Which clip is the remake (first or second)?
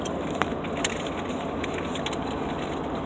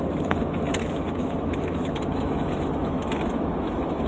second